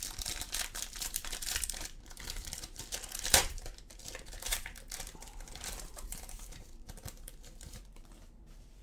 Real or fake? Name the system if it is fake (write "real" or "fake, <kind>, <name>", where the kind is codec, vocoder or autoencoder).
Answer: fake, vocoder, BigVGAN v2